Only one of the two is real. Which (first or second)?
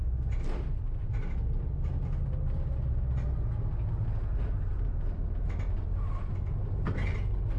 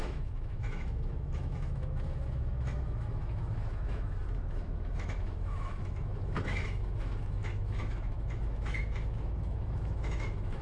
first